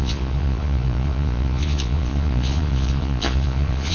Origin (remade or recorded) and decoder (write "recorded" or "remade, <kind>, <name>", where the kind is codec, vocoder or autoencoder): remade, vocoder, Vocos